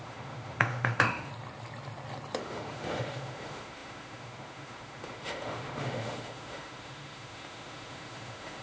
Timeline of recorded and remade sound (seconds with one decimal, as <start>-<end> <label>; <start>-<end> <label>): 0.0-1.3 remade; 1.3-2.4 recorded; 2.4-8.6 remade